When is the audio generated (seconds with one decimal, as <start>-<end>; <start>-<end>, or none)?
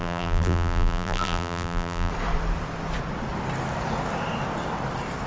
0.0-2.1